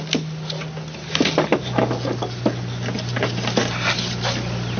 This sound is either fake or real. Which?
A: real